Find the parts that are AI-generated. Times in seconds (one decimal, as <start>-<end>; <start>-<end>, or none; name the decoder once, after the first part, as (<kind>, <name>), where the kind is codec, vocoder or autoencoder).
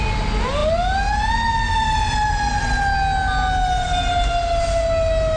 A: 1.8-2.6 (vocoder, BigVGAN v2)